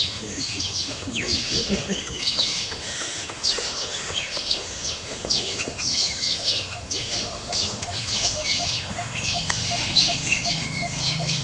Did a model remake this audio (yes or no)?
yes